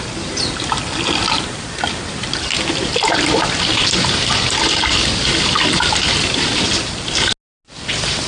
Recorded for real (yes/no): yes